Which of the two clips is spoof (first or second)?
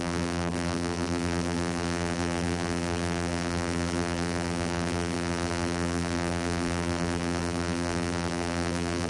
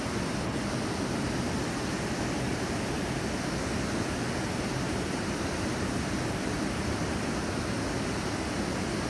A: first